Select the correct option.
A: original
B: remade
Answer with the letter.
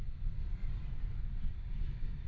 A